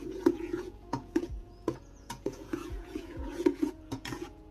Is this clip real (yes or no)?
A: no